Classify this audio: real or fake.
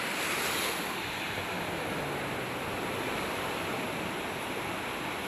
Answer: real